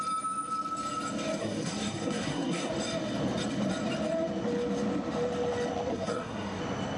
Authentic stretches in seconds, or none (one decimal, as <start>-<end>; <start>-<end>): 0.0-1.4; 2.7-5.9; 6.6-7.0